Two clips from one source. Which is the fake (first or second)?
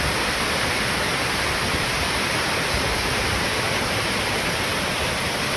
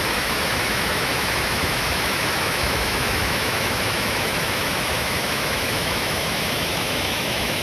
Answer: second